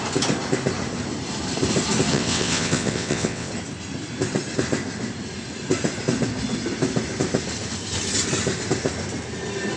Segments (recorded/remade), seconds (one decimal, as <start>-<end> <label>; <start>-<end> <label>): 0.0-2.1 recorded; 2.1-3.5 remade; 3.5-9.8 recorded